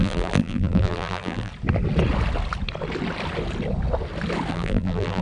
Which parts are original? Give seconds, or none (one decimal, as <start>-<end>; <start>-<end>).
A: 1.5-4.5